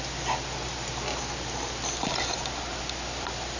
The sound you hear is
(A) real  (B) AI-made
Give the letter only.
A